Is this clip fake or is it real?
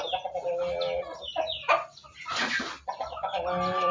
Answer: real